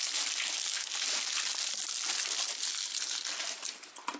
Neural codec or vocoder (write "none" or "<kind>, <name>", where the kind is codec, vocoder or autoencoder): none